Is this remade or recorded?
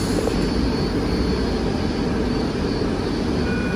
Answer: recorded